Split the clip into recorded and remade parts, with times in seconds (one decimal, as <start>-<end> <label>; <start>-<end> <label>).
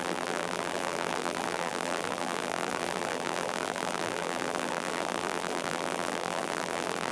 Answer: 0.0-7.1 remade